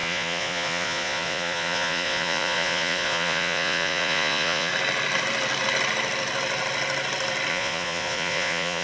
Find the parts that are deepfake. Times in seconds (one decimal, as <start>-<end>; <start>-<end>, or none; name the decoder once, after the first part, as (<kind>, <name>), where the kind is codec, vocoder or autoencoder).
0.0-4.7 (vocoder, Vocos); 7.5-8.8